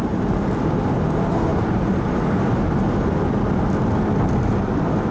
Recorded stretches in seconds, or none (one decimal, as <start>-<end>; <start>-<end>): 0.0-5.1